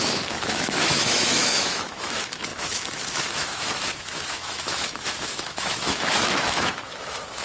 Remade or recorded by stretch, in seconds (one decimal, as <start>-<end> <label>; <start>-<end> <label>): 0.0-7.4 remade

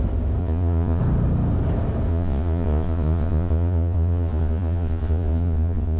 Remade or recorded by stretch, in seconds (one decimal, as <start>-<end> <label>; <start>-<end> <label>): 0.0-0.4 recorded; 0.4-1.0 remade; 1.0-2.1 recorded; 2.1-6.0 remade

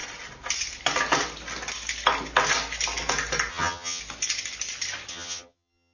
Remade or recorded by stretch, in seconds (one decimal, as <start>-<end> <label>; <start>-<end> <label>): 0.0-3.5 recorded; 3.5-4.0 remade; 4.0-5.1 recorded; 5.1-5.9 remade

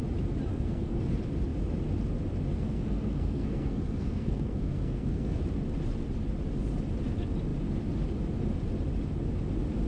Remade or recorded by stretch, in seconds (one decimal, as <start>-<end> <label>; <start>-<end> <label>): 0.0-0.5 recorded; 0.5-1.0 remade; 1.0-2.5 recorded; 2.5-5.4 remade; 5.4-9.9 recorded

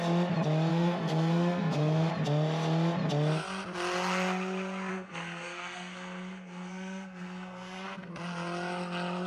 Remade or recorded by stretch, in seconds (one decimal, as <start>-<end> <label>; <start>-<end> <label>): 0.0-0.7 recorded; 0.7-2.1 remade; 2.1-4.9 recorded; 4.9-8.1 remade; 8.1-9.3 recorded